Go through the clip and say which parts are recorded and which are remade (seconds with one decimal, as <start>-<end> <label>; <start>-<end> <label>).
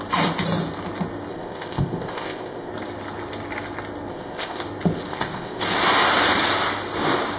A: 0.0-1.3 recorded; 1.3-2.7 remade; 2.7-4.1 recorded; 4.1-4.6 remade; 4.6-5.1 recorded; 5.1-5.6 remade; 5.6-7.4 recorded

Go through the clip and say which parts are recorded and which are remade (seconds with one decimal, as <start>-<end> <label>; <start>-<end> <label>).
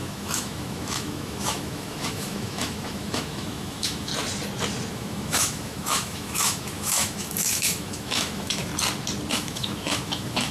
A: 0.0-4.1 remade; 4.1-4.9 recorded; 4.9-8.7 remade; 8.7-9.3 recorded; 9.3-10.5 remade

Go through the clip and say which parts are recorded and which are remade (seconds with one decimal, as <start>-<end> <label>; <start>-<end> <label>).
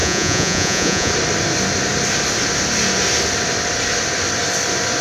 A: 0.0-1.1 remade; 1.1-5.0 recorded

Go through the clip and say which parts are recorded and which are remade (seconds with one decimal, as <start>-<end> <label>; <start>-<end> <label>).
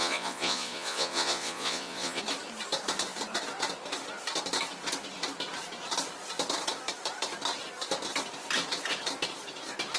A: 0.0-2.2 remade; 2.2-10.0 recorded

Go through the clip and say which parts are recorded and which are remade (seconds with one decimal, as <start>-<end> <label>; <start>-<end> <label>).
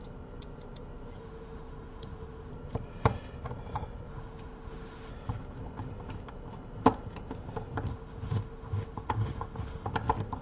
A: 0.0-1.2 recorded; 1.2-2.5 remade; 2.5-4.1 recorded; 4.1-5.1 remade; 5.1-7.9 recorded; 7.9-9.9 remade; 9.9-10.4 recorded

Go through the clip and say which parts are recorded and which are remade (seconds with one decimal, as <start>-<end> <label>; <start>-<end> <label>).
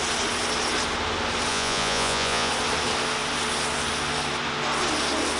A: 0.0-1.5 recorded; 1.5-2.5 remade; 2.5-5.4 recorded